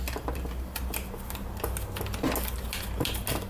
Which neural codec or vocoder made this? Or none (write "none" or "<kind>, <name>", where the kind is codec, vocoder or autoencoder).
none